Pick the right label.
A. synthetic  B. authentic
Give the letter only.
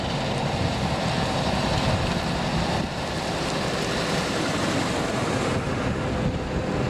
B